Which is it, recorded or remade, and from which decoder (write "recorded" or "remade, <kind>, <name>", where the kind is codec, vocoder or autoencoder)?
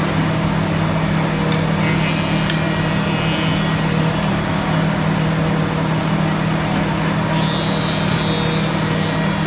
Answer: recorded